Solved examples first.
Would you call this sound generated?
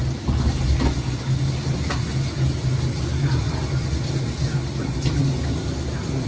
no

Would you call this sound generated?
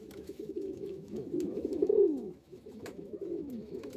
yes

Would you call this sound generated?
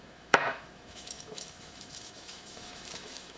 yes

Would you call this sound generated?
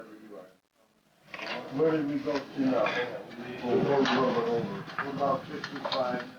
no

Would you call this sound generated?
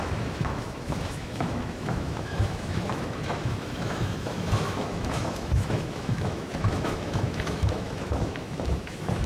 yes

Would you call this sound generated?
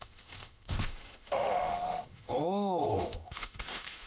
yes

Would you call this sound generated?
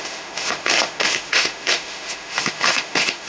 yes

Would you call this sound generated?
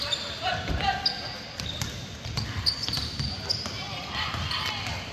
no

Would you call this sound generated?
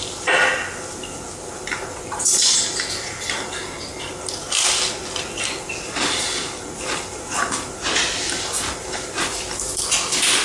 no